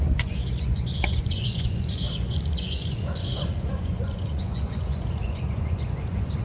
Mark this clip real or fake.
fake